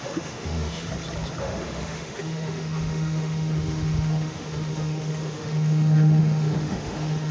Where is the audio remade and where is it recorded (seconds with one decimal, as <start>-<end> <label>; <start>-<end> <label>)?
0.0-0.9 remade; 0.9-1.4 recorded; 1.4-7.3 remade